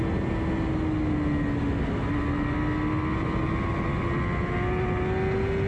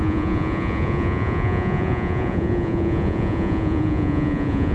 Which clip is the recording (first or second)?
first